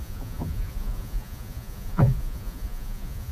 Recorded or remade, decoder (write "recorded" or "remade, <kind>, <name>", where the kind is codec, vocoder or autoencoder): remade, vocoder, Vocos